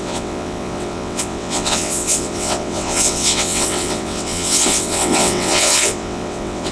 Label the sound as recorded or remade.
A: remade